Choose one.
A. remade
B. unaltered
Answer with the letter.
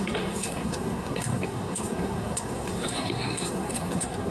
A